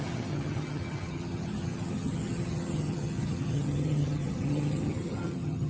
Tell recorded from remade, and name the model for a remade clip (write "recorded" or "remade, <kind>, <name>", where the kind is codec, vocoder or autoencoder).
remade, vocoder, HiFi-GAN